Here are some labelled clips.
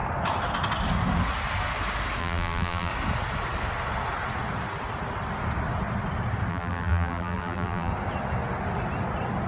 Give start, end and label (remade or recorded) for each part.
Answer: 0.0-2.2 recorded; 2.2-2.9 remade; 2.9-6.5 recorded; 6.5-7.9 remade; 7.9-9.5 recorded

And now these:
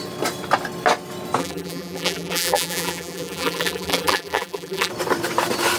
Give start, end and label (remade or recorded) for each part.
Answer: 0.0-1.4 recorded; 1.4-4.9 remade; 4.9-5.8 recorded

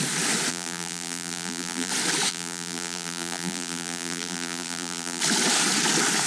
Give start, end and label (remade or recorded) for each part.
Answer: 0.0-0.5 recorded; 0.5-1.9 remade; 1.9-2.3 recorded; 2.3-5.2 remade; 5.2-6.3 recorded

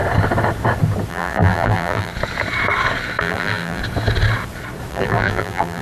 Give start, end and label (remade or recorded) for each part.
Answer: 0.0-1.1 recorded; 1.1-2.1 remade; 2.1-3.2 recorded; 3.2-3.8 remade; 3.8-4.9 recorded; 4.9-5.8 remade

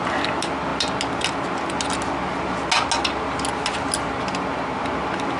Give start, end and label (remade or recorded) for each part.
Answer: 0.0-5.4 recorded

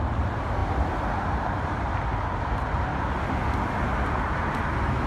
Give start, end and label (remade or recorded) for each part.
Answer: 0.0-0.6 recorded; 0.6-2.0 remade; 2.0-5.1 recorded